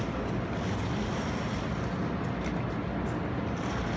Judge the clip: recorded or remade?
recorded